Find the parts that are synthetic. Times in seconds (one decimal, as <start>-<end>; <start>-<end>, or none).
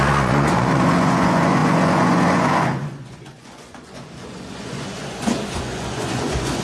0.0-6.6